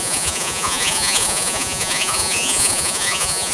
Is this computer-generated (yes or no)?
yes